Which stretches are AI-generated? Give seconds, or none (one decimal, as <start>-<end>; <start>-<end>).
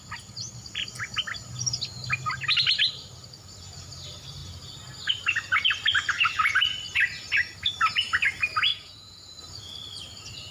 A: 8.7-9.4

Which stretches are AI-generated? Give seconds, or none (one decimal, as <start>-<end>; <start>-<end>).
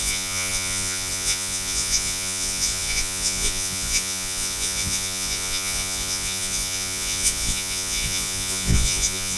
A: 0.0-9.4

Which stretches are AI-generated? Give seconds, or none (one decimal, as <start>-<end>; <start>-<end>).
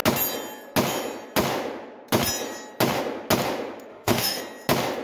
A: 3.9-4.4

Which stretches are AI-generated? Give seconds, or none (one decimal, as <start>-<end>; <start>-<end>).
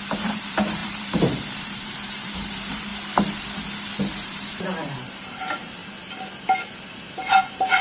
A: 0.0-2.9; 4.0-5.8; 7.1-7.8